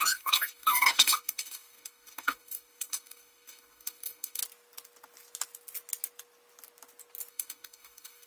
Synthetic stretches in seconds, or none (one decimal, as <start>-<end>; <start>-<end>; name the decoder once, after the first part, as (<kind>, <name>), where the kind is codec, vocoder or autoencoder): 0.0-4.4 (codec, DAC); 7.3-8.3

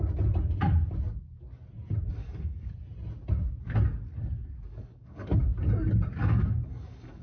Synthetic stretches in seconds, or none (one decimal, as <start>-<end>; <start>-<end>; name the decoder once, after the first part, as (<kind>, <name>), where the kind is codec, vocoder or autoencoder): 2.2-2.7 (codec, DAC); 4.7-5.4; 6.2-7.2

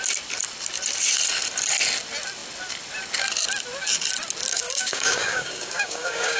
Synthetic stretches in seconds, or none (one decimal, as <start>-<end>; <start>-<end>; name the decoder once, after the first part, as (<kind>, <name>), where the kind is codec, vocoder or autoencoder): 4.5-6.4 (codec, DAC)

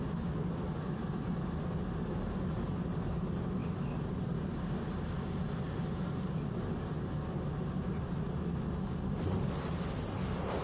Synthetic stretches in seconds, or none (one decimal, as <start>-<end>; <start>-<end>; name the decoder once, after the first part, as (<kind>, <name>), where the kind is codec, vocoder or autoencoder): none